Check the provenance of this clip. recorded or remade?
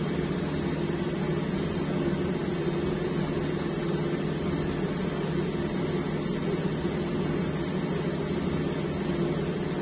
recorded